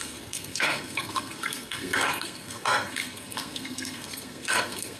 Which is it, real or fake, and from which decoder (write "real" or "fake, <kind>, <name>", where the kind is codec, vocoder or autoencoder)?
fake, codec, SNAC